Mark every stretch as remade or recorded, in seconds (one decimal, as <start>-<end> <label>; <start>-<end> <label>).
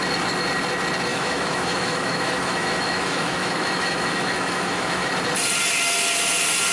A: 0.0-1.1 recorded; 1.1-5.1 remade; 5.1-6.7 recorded